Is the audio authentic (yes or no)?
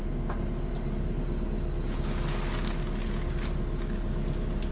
yes